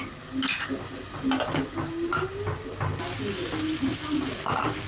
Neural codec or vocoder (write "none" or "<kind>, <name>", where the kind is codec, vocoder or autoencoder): none